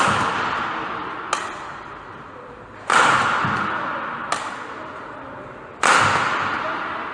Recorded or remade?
recorded